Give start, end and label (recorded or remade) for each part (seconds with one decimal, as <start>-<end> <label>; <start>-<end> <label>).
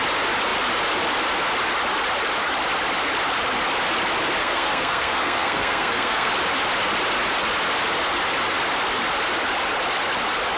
0.0-4.4 recorded; 4.4-6.3 remade; 6.3-10.6 recorded